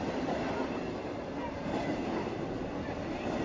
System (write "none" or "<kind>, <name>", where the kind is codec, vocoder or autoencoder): none